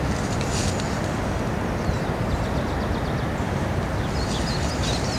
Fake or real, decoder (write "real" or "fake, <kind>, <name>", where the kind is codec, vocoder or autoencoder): real